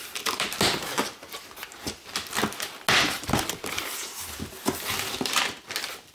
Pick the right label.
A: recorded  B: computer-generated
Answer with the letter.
A